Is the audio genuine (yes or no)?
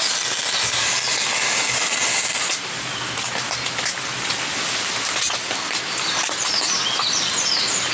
yes